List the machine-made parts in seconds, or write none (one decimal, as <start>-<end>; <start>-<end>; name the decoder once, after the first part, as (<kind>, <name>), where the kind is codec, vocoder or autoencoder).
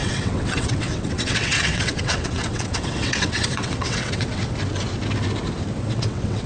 0.0-4.4 (vocoder, WaveNeXt); 5.8-6.5